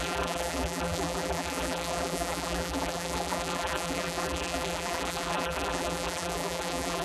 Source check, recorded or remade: remade